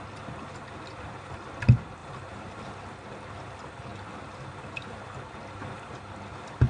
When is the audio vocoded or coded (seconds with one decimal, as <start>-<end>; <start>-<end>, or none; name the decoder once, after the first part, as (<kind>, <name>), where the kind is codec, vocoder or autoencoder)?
2.0-2.7 (vocoder, BigVGAN v2)